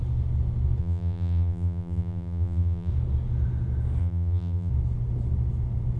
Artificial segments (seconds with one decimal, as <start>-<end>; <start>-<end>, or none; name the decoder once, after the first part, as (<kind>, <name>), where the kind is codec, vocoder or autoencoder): 0.8-2.9 (vocoder, BigVGAN v2); 4.0-4.7